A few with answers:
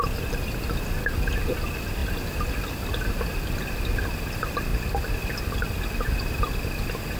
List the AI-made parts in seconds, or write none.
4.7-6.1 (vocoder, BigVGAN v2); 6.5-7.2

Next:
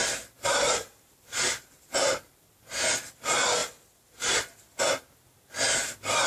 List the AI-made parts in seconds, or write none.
0.0-2.9 (vocoder, BigVGAN v2)